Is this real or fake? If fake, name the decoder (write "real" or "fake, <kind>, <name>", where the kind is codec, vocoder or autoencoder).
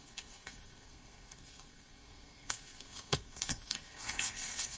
fake, codec, SNAC